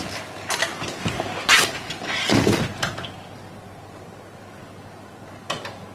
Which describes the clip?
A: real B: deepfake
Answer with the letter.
A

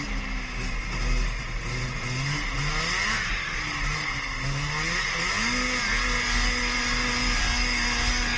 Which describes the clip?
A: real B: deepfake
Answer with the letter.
A